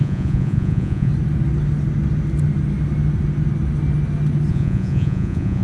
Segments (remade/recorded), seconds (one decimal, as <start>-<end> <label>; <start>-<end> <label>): 0.0-1.1 remade; 1.1-4.5 recorded; 4.5-5.6 remade